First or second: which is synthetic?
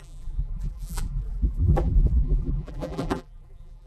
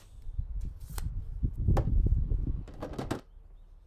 first